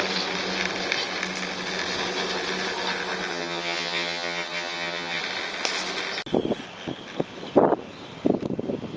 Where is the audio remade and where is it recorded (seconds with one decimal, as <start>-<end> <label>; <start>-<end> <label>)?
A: 0.0-3.3 recorded; 3.3-5.2 remade; 5.2-9.0 recorded